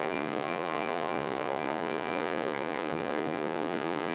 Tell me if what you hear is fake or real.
fake